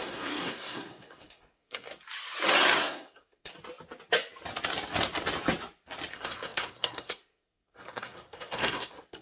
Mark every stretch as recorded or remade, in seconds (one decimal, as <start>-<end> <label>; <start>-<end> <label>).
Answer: 0.0-1.9 remade; 1.9-2.8 recorded; 2.8-3.5 remade; 3.5-6.1 recorded; 6.1-9.2 remade